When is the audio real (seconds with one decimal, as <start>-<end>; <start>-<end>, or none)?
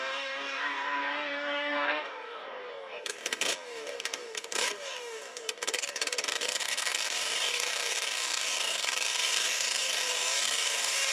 none